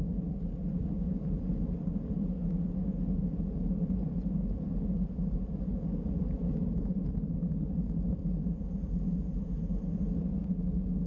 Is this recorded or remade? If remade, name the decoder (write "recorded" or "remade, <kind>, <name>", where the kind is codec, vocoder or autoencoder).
recorded